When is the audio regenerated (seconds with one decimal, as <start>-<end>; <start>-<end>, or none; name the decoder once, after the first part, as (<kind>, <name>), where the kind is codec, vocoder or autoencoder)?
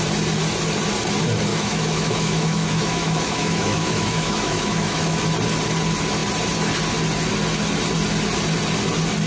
1.5-5.2 (autoencoder, DAC-VAE)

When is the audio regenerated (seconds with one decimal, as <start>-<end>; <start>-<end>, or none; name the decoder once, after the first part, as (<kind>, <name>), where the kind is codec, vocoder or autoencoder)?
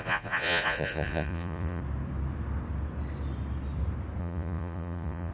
0.0-1.8 (vocoder, Vocos); 4.2-5.3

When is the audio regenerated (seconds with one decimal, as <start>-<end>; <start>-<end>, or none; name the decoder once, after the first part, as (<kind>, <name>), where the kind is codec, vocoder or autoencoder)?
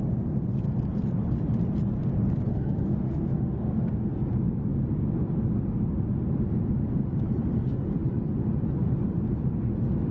2.5-3.9 (autoencoder, DAC-VAE)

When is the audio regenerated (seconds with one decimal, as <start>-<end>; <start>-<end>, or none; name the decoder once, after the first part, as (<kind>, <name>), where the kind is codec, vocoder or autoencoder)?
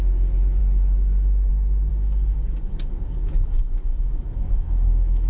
1.9-5.3 (codec, DAC)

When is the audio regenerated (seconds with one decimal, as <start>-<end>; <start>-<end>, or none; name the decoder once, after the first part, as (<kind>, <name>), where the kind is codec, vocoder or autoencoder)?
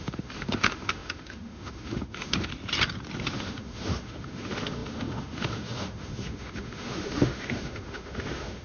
0.0-2.5 (autoencoder, DAC-VAE); 3.3-8.6